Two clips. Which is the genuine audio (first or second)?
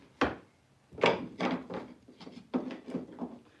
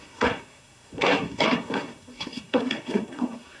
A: first